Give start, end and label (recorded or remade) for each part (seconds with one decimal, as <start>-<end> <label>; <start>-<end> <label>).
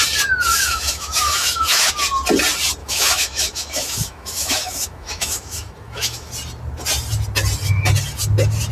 0.0-0.5 recorded; 0.5-1.9 remade; 1.9-2.8 recorded; 2.8-6.3 remade; 6.3-8.7 recorded